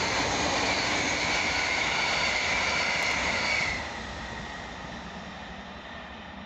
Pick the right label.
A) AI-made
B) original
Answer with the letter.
B